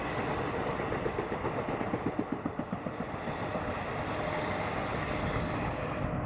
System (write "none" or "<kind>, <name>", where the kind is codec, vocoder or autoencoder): none